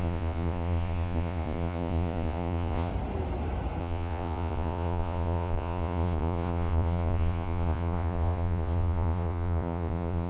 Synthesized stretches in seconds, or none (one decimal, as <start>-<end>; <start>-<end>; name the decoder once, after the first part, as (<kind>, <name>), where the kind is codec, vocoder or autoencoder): 0.0-2.9 (vocoder, Vocos); 3.8-10.3